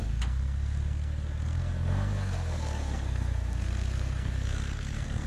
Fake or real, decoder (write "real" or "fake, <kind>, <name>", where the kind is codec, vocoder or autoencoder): fake, codec, SNAC